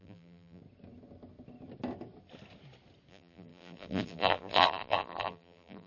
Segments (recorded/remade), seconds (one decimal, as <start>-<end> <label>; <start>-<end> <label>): 0.0-0.6 remade; 0.6-3.1 recorded; 3.1-5.9 remade